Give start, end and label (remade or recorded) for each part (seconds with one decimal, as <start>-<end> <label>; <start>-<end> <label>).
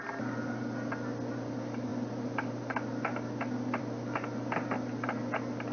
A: 0.0-5.7 recorded